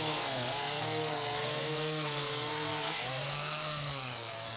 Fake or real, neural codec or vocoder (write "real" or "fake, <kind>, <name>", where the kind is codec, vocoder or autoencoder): fake, codec, SNAC